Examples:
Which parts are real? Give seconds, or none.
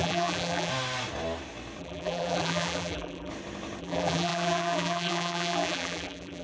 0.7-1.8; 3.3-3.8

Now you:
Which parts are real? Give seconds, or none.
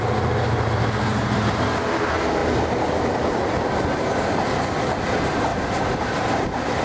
0.0-1.1; 1.6-5.5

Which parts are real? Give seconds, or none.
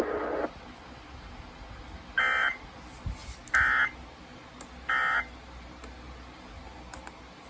0.0-7.5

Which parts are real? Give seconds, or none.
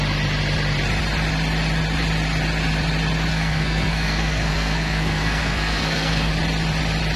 0.0-3.3; 6.3-7.2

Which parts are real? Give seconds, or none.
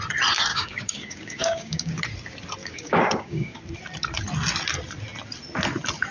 0.0-0.5; 2.0-2.6; 3.6-6.1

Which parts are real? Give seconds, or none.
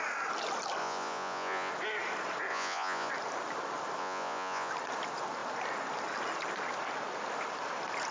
0.0-0.8; 1.7-2.5; 3.1-4.0; 4.7-8.1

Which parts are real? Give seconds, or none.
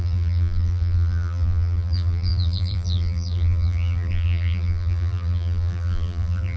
none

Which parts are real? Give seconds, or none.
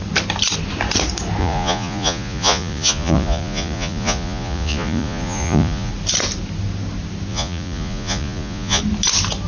0.0-1.4; 5.9-7.3; 8.8-9.5